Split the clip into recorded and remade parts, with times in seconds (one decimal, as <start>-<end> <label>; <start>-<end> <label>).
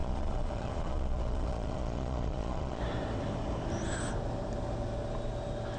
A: 0.0-2.8 remade; 2.8-5.8 recorded